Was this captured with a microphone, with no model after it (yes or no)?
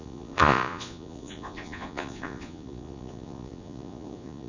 no